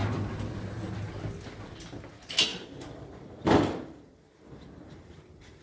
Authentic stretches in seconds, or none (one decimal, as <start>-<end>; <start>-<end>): 0.0-2.5